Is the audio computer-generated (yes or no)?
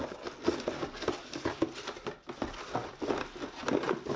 no